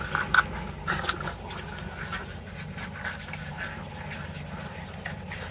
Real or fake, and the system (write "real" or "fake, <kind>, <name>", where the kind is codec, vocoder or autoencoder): real